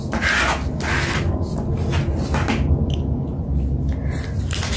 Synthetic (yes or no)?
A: no